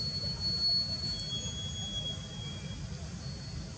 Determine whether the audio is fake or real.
real